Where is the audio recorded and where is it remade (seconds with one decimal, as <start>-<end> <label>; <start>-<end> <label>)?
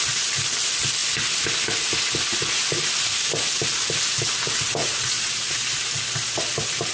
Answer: 0.0-4.8 recorded; 4.8-5.6 remade; 5.6-6.9 recorded